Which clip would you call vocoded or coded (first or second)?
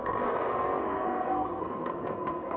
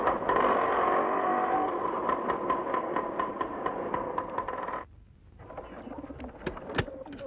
first